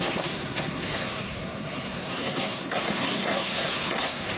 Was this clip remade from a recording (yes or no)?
yes